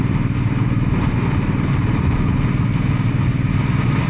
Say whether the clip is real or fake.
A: real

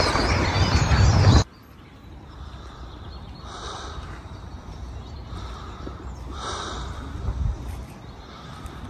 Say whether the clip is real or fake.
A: fake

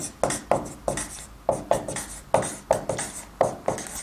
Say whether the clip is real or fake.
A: real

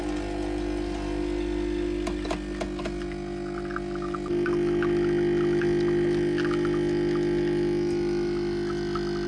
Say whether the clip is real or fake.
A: real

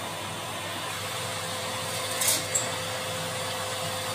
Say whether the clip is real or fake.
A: real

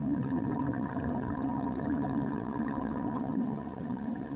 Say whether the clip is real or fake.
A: fake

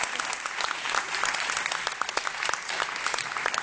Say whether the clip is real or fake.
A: real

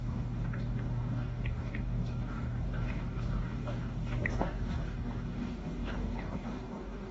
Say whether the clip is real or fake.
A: fake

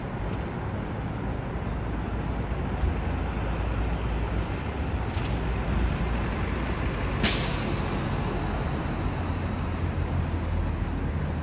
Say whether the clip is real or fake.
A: real